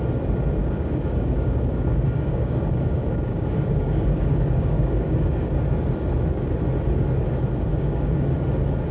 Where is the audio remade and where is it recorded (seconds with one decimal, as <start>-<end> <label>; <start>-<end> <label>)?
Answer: 0.0-0.6 recorded; 0.6-5.5 remade; 5.5-7.7 recorded; 7.7-8.3 remade; 8.3-8.9 recorded